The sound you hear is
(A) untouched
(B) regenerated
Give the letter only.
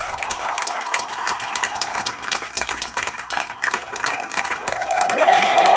B